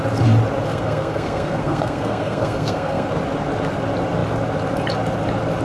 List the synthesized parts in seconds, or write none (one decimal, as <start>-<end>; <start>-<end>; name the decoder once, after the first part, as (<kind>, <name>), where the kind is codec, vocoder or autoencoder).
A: 0.7-3.1 (codec, SNAC)

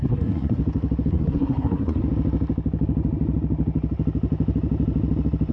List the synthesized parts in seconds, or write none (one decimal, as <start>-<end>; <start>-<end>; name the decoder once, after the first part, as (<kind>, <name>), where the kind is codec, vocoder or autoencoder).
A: 0.0-0.6 (codec, SNAC); 1.1-2.0

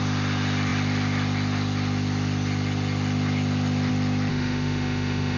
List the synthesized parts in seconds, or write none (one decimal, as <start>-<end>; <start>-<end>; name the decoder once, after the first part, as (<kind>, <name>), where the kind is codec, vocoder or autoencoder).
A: 4.3-5.4 (autoencoder, DAC-VAE)

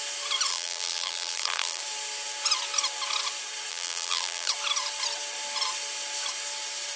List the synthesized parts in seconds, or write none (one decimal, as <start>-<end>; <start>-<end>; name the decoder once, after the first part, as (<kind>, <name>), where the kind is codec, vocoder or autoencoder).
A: 0.5-1.8 (vocoder, BigVGAN v2); 3.7-4.5

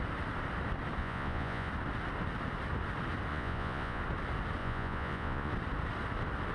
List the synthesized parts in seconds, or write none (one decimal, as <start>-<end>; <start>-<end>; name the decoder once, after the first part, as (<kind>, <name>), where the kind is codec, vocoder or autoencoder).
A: 1.0-1.7 (vocoder, Vocos); 3.3-4.0; 4.6-5.5

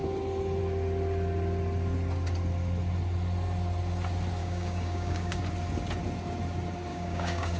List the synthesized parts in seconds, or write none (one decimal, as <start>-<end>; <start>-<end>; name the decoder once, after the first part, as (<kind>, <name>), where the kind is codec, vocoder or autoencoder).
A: 4.4-5.4 (codec, DAC); 6.9-7.6

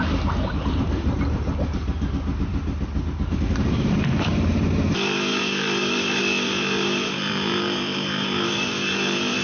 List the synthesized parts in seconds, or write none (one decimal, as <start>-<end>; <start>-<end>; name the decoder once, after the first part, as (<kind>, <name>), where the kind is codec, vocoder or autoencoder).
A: 0.0-2.5 (vocoder, BigVGAN v2); 3.1-9.4

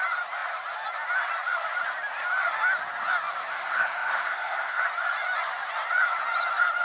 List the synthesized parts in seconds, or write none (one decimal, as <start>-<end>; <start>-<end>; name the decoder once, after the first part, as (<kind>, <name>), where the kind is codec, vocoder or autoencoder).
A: 3.5-4.8 (codec, SNAC)